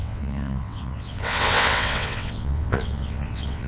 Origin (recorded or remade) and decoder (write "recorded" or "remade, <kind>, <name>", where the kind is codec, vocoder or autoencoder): remade, vocoder, WaveNeXt